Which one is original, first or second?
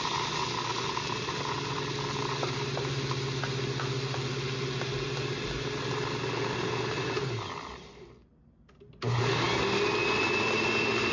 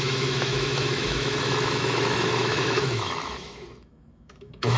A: first